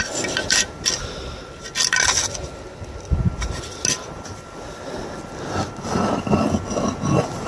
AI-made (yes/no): no